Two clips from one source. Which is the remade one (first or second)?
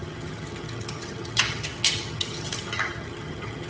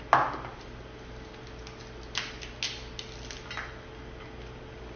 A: first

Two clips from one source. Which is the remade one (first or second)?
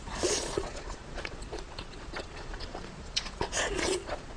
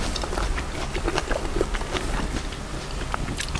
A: first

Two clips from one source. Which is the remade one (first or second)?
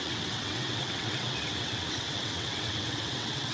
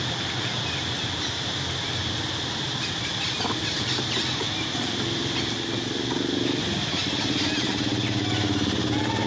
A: first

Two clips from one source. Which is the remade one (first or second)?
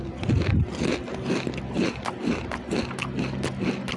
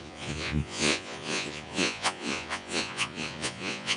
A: second